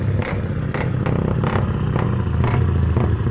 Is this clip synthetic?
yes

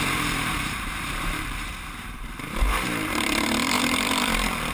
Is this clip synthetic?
yes